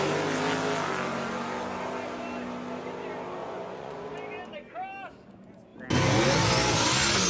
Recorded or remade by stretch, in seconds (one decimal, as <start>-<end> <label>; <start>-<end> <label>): 0.0-3.4 recorded; 3.4-4.1 remade; 4.1-7.3 recorded